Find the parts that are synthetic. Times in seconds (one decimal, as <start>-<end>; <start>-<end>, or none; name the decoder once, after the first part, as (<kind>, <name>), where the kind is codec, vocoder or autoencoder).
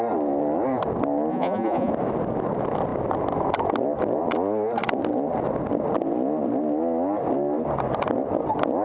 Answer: 1.3-1.9 (vocoder, Vocos)